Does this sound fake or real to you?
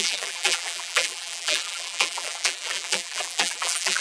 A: fake